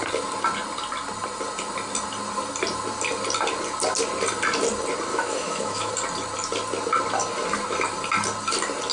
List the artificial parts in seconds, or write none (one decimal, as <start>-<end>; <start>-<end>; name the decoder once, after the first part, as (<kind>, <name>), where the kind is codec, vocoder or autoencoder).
5.1-5.9 (autoencoder, DAC-VAE)